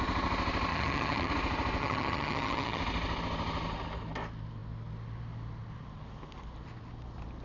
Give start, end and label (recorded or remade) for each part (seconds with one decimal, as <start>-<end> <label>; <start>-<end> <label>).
0.0-0.7 recorded; 0.7-1.3 remade; 1.3-1.8 recorded; 1.8-2.8 remade; 2.8-7.4 recorded

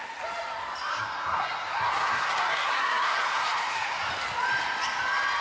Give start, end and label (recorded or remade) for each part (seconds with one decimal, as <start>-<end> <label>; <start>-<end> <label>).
0.0-0.9 recorded; 0.9-4.1 remade; 4.1-5.4 recorded

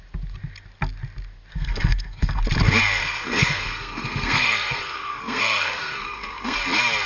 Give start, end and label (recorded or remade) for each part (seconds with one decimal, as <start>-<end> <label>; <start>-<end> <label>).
0.0-1.5 recorded; 1.5-2.4 remade; 2.4-3.0 recorded; 3.0-6.6 remade; 6.6-7.1 recorded

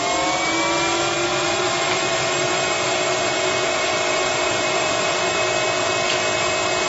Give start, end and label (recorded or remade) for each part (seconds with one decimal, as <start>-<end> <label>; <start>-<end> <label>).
0.0-1.3 recorded; 1.3-5.4 remade; 5.4-6.9 recorded

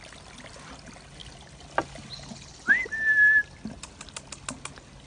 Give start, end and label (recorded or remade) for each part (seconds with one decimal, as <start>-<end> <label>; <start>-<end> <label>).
0.0-5.1 recorded

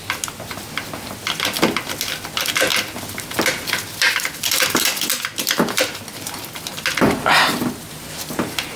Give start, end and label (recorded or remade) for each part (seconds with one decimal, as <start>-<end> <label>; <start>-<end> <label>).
0.0-8.8 recorded